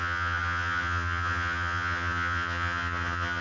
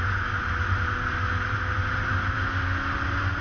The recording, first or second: second